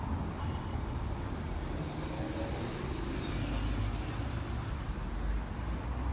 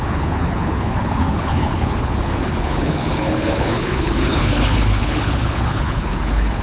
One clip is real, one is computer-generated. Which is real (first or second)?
first